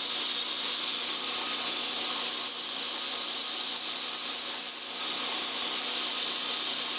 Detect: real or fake real